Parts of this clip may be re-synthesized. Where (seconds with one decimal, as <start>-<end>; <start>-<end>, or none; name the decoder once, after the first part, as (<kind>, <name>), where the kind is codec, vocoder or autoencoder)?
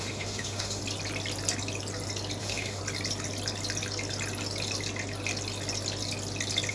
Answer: 0.0-0.8 (autoencoder, DAC-VAE); 2.4-2.8